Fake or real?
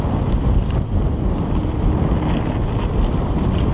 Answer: real